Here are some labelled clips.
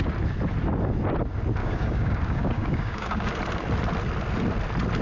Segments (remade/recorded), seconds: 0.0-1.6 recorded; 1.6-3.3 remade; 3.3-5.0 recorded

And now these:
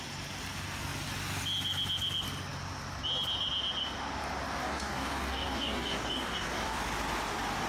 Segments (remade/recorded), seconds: 0.0-4.6 recorded; 4.6-6.8 remade; 6.8-7.7 recorded

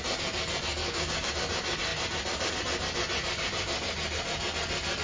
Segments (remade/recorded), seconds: 0.0-0.8 recorded; 0.8-1.3 remade; 1.3-5.0 recorded

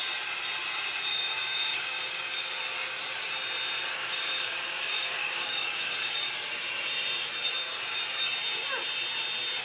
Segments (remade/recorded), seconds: 0.0-1.1 recorded; 1.1-2.5 remade; 2.5-3.9 recorded; 3.9-6.5 remade; 6.5-9.6 recorded

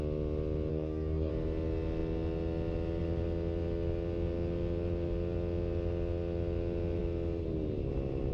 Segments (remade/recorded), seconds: 0.0-0.7 recorded; 0.7-1.3 remade; 1.3-8.3 recorded

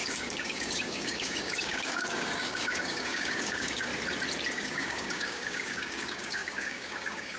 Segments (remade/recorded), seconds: 0.0-3.9 remade; 3.9-4.5 recorded; 4.5-7.4 remade

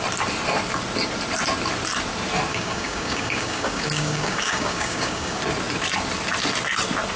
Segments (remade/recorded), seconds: 0.0-2.5 recorded; 2.5-5.4 remade; 5.4-7.2 recorded